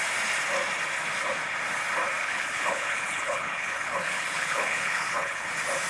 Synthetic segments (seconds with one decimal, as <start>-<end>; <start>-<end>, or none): 2.2-5.5